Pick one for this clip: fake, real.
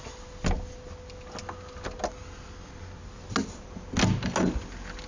real